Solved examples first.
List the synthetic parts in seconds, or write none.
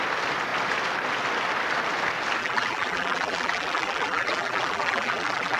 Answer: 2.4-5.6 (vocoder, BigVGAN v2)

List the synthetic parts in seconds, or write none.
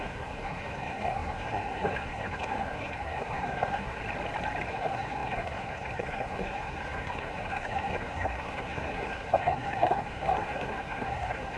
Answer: 0.0-4.0 (codec, SNAC); 4.7-11.6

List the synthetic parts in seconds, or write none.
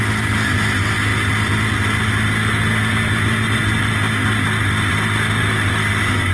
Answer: none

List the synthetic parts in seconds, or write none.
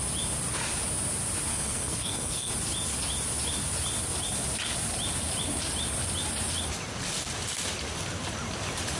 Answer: 1.5-2.5 (codec, SNAC)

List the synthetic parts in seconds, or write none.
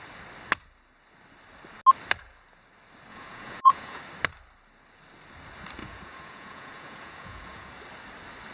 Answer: 3.1-4.0 (vocoder, Vocos); 5.8-7.7